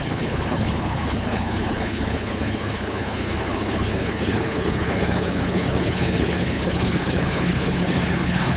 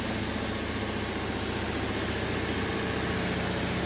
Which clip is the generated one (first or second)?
first